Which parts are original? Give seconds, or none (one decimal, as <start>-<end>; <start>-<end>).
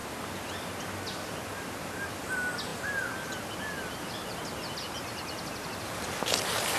0.0-6.8